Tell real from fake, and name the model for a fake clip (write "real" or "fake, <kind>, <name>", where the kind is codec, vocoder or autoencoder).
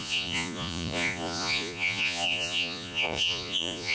fake, vocoder, Vocos